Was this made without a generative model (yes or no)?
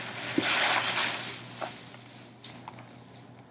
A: yes